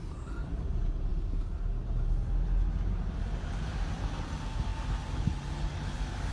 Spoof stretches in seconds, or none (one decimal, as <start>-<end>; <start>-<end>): none